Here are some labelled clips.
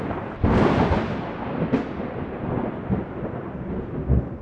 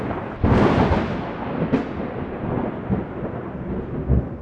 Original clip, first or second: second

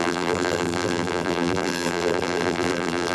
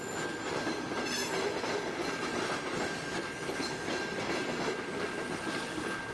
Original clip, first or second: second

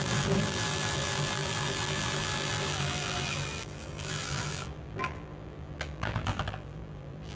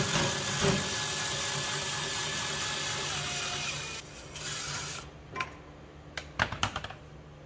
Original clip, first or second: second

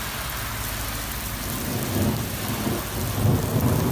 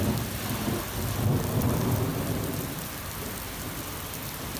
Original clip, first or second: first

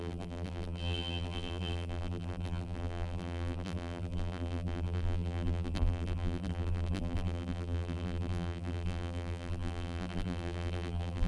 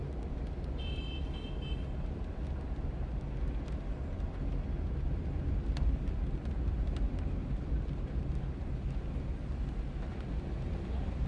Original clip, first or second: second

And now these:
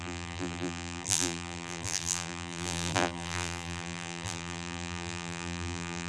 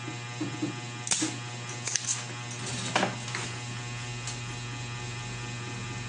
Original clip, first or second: second